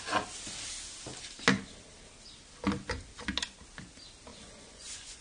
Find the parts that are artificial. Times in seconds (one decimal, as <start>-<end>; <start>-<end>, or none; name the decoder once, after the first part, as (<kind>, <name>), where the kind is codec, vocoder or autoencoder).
4.3-5.2 (vocoder, Vocos)